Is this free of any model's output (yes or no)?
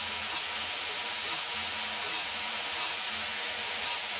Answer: yes